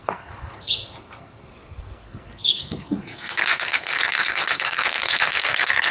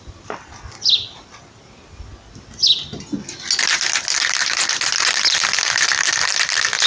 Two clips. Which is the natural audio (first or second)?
second